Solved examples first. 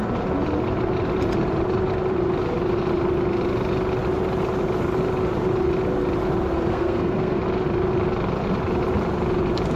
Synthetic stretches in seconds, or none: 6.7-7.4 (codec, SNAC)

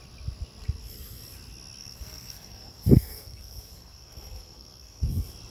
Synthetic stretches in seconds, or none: 1.8-5.1 (codec, SNAC)

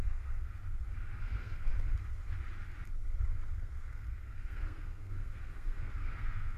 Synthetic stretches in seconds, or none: 0.0-0.5 (codec, SNAC); 1.2-1.7; 3.5-6.6

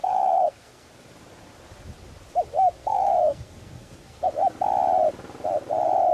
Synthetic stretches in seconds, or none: 0.0-0.9 (codec, SNAC); 2.8-4.3

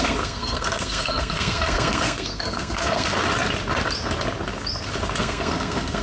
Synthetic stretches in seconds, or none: 0.0-3.2 (codec, SNAC); 5.2-6.0

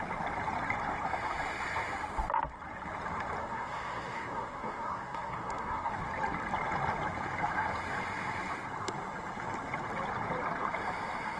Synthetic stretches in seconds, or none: 3.4-5.9 (codec, SNAC)

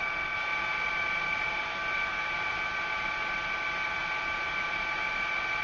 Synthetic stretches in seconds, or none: none